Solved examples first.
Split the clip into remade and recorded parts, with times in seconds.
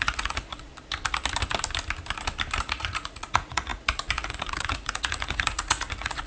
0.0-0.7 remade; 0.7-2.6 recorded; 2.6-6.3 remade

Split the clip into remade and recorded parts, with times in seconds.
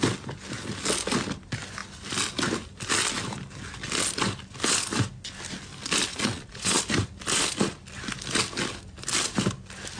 0.0-6.1 recorded; 6.1-6.8 remade; 6.8-10.0 recorded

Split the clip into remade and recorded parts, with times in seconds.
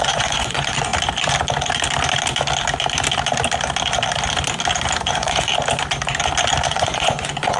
0.0-0.9 remade; 0.9-5.1 recorded; 5.1-5.5 remade; 5.5-6.7 recorded; 6.7-7.6 remade